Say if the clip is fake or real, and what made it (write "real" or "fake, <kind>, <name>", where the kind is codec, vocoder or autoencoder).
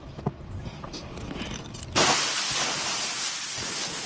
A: real